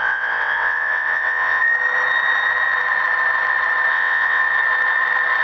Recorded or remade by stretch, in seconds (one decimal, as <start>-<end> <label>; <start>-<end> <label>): 0.0-1.6 remade; 1.6-3.9 recorded; 3.9-4.4 remade; 4.4-5.4 recorded